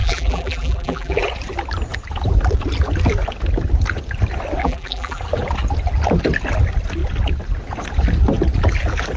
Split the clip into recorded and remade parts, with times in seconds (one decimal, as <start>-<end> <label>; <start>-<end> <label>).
0.0-1.2 remade; 1.2-4.6 recorded; 4.6-5.2 remade; 5.2-9.2 recorded